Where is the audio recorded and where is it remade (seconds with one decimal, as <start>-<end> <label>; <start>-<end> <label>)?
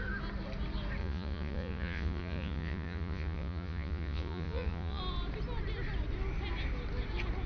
0.0-1.0 recorded; 1.0-5.0 remade; 5.0-7.5 recorded